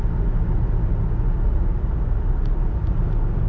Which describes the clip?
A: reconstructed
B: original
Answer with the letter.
B